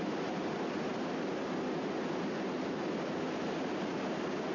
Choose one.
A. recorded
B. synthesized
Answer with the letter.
A